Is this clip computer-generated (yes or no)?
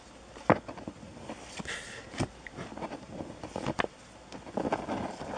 no